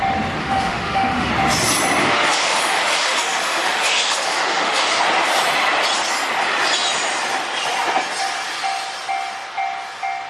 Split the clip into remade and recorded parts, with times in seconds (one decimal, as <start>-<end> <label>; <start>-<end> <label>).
0.0-0.4 recorded; 0.4-1.3 remade; 1.3-2.0 recorded; 2.0-5.0 remade; 5.0-10.3 recorded